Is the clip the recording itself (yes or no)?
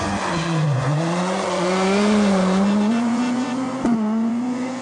no